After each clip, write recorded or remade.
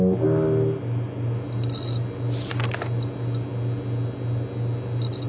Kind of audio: recorded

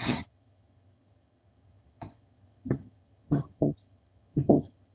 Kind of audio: remade